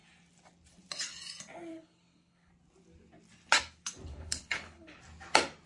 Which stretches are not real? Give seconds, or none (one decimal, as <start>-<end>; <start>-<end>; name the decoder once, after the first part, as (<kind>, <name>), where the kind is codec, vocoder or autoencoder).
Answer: 1.7-2.5 (codec, HILCodec); 4.1-5.0